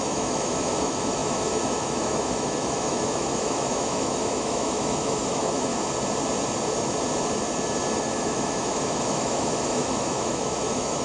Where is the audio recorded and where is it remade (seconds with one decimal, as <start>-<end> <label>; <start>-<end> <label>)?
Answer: 0.0-5.7 remade; 5.7-8.0 recorded; 8.0-11.0 remade

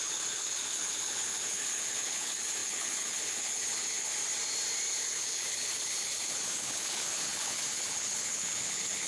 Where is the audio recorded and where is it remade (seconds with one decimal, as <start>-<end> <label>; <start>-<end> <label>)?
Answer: 0.0-4.1 remade; 4.1-5.0 recorded; 5.0-9.1 remade

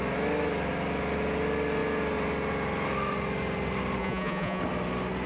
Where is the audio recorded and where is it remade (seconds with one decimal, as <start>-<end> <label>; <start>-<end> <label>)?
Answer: 0.0-4.0 recorded; 4.0-4.6 remade; 4.6-5.3 recorded

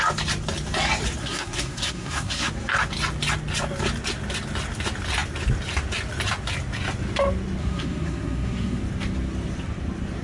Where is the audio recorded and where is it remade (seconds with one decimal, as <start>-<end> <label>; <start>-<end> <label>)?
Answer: 0.0-1.2 recorded; 1.2-2.5 remade; 2.5-7.6 recorded; 7.6-8.8 remade; 8.8-10.2 recorded